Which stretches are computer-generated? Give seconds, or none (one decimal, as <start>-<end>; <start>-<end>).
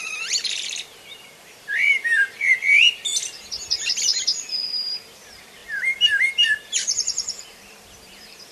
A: 0.0-3.1; 3.9-8.5